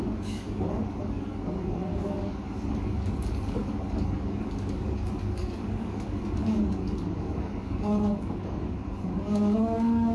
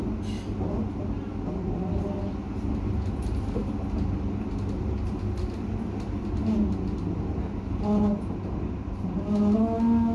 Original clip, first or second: second